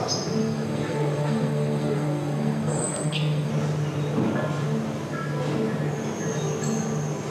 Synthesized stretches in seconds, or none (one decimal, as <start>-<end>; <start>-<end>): 0.4-3.5